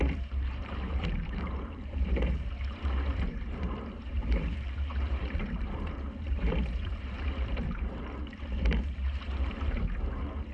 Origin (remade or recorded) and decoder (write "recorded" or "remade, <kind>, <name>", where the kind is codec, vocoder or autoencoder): remade, vocoder, BigVGAN v2